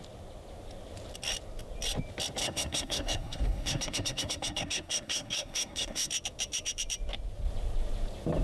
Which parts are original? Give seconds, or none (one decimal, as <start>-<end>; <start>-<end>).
0.0-2.4; 6.1-8.4